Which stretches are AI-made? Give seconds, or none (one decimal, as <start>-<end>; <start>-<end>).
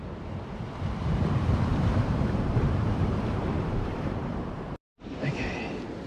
1.7-5.4